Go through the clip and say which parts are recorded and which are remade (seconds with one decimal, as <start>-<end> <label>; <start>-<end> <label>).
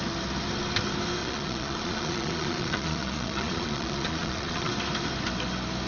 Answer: 0.0-1.2 recorded; 1.2-4.7 remade; 4.7-5.9 recorded